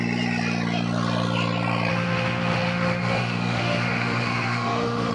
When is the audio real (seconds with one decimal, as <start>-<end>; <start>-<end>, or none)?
0.0-1.9